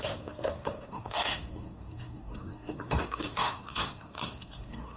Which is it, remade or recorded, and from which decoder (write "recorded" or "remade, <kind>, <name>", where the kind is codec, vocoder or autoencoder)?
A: remade, codec, SNAC